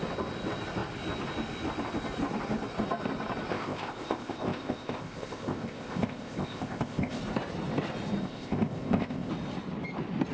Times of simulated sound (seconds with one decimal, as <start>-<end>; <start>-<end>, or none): 3.5-7.2; 8.2-9.3